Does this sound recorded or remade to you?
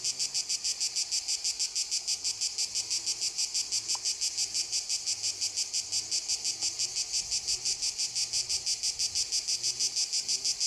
recorded